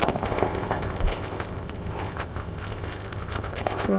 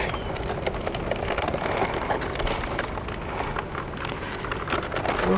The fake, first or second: first